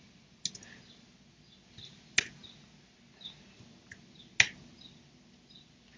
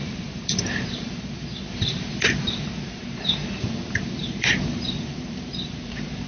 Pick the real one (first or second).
first